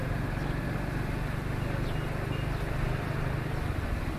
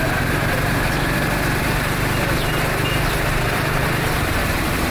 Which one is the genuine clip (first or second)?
first